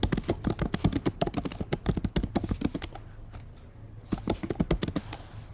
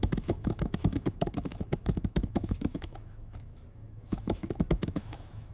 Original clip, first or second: first